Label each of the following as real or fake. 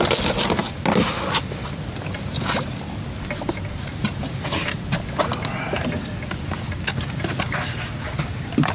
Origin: real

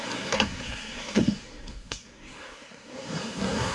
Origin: fake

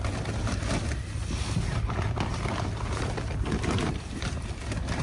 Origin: fake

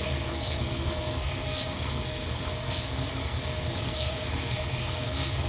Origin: fake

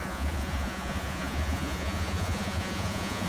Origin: fake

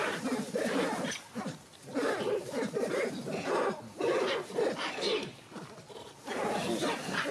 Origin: real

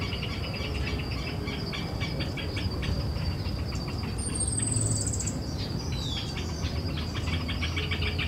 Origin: real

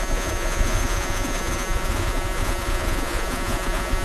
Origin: fake